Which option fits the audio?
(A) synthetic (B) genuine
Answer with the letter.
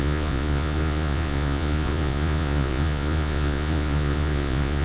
A